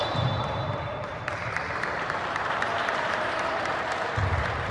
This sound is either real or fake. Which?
fake